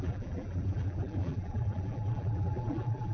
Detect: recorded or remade remade